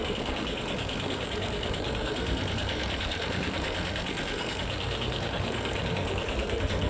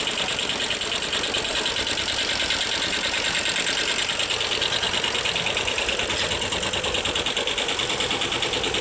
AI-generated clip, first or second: first